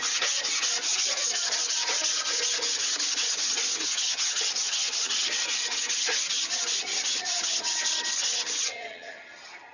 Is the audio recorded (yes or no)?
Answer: no